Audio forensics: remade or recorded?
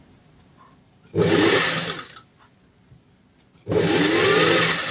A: recorded